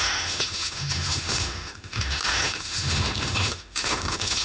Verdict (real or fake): fake